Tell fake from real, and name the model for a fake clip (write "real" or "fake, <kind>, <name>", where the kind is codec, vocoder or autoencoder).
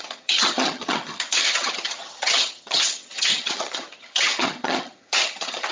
fake, vocoder, HiFi-GAN